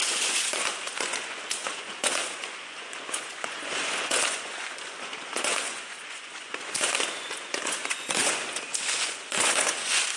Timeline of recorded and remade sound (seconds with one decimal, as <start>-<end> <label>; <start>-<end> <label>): 0.0-10.2 remade